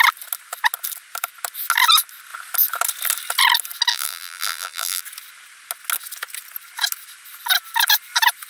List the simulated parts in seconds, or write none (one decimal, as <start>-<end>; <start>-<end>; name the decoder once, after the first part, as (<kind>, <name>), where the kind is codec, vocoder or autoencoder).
3.9-5.0 (vocoder, BigVGAN v2)